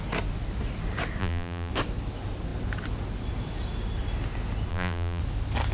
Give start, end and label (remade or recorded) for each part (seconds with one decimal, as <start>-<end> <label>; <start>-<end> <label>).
0.0-1.2 recorded; 1.2-1.7 remade; 1.7-4.7 recorded; 4.7-5.2 remade; 5.2-5.7 recorded